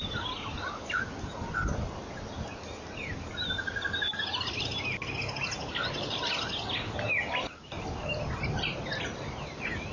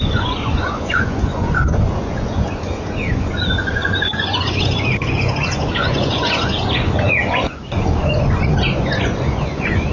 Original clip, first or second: first